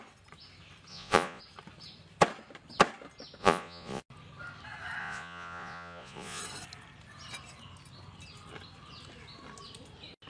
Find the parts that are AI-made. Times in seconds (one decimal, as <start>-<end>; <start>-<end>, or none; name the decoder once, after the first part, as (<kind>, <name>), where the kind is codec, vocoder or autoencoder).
0.9-1.4 (vocoder, Vocos); 3.4-4.0; 5.0-6.4